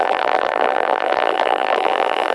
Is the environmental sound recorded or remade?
remade